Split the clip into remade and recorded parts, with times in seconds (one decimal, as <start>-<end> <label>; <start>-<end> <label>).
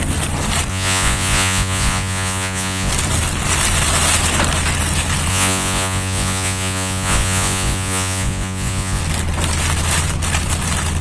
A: 0.0-0.7 recorded; 0.7-2.9 remade; 2.9-5.3 recorded; 5.3-9.0 remade; 9.0-11.0 recorded